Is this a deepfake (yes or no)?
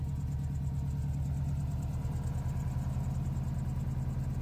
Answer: no